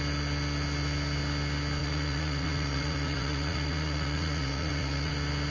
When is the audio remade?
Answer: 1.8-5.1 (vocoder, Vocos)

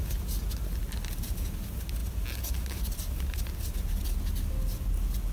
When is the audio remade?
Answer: none

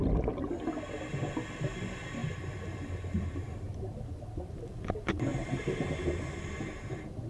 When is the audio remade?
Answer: 3.7-4.5 (vocoder, BigVGAN v2); 5.3-6.2